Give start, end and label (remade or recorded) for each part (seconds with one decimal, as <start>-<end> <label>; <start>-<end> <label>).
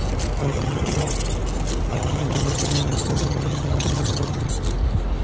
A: 0.0-0.4 recorded; 0.4-1.1 remade; 1.1-1.9 recorded; 1.9-4.5 remade; 4.5-5.2 recorded